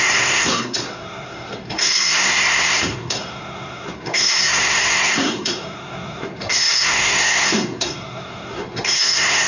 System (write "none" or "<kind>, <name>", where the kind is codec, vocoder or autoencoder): codec, SNAC